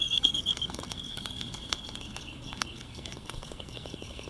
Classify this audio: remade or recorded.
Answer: remade